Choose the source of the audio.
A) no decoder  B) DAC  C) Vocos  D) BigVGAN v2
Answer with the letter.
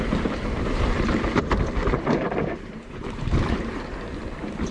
D